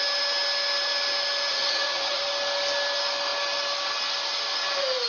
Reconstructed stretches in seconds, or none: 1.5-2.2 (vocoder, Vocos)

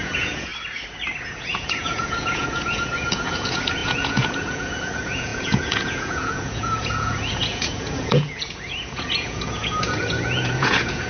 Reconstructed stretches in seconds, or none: 0.0-0.5 (vocoder, Vocos); 1.2-11.1

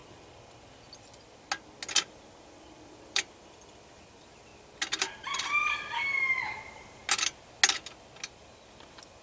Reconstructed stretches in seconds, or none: 2.1-4.5 (vocoder, BigVGAN v2); 5.0-7.0; 8.4-9.2

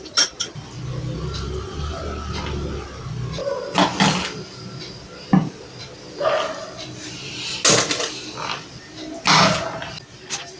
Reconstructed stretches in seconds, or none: none